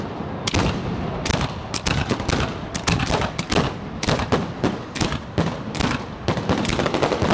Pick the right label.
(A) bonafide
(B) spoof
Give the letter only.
A